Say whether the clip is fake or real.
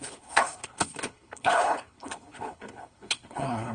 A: fake